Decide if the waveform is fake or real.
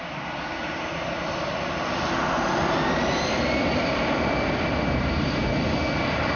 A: real